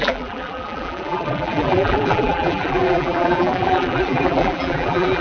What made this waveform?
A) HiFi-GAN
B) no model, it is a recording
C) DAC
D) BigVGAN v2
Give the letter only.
D